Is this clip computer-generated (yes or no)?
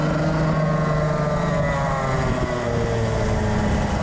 no